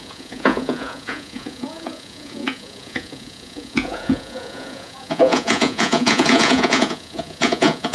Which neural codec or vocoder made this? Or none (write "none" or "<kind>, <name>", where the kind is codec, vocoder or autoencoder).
vocoder, Vocos